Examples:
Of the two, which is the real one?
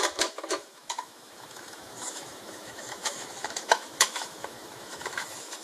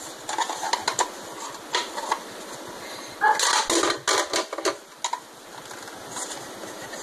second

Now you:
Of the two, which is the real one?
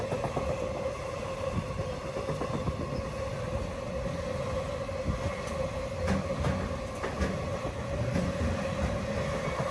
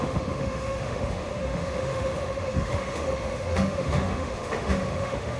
first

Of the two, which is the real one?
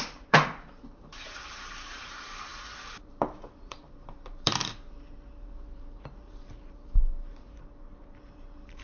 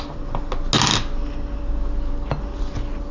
second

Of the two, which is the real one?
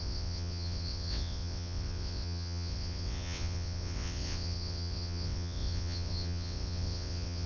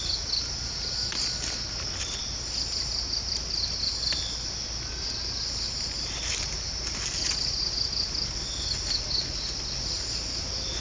second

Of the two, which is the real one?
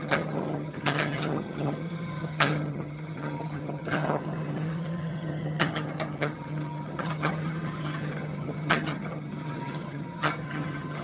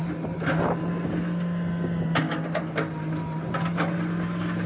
second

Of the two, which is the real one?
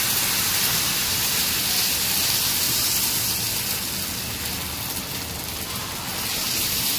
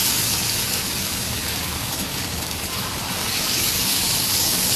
first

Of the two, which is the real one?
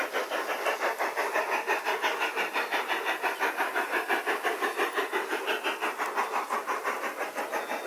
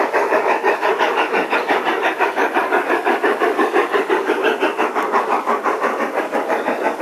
first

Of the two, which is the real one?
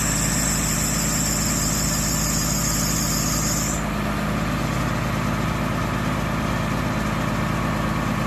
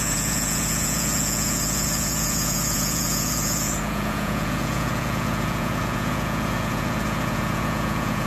first